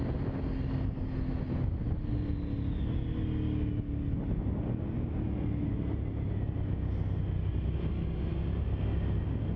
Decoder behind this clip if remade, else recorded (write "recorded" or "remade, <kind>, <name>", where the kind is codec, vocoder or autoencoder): recorded